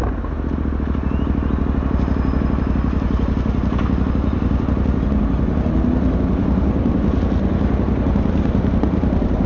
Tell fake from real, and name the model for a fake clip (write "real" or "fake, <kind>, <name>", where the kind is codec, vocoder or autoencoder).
real